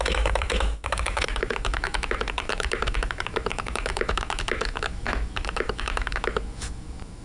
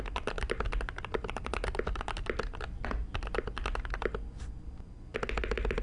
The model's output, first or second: first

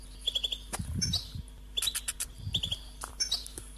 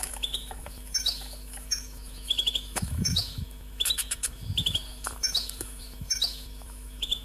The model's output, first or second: second